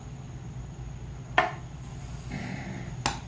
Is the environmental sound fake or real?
real